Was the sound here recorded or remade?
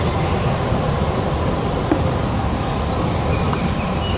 recorded